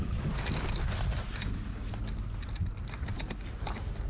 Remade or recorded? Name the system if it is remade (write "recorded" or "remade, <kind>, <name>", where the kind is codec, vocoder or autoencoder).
recorded